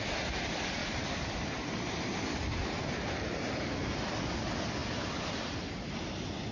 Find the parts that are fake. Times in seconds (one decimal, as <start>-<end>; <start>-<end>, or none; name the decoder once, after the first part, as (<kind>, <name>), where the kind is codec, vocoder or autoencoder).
0.8-3.3 (vocoder, BigVGAN v2)